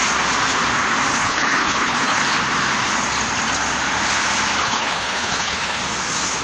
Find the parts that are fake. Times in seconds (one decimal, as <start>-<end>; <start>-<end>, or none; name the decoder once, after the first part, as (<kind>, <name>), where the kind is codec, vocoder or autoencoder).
1.1-2.2 (codec, HILCodec); 4.6-5.8